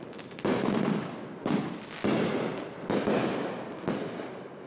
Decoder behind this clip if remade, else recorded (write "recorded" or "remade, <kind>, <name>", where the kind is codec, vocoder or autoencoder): recorded